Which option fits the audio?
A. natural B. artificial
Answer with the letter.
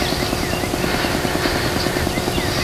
A